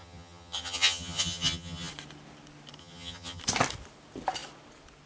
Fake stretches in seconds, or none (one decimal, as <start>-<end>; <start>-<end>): 0.0-1.9; 2.8-3.4